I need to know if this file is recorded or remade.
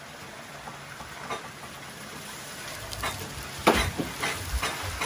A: recorded